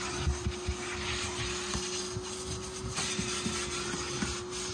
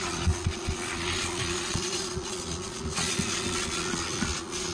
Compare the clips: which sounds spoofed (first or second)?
second